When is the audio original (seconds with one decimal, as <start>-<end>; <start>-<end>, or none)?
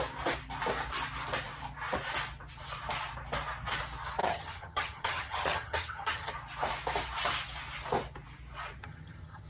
0.0-4.2; 6.3-8.8